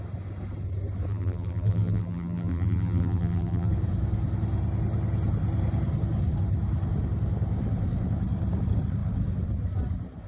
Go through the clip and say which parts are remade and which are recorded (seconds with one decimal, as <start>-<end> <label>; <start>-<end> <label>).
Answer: 0.0-1.1 recorded; 1.1-3.7 remade; 3.7-10.3 recorded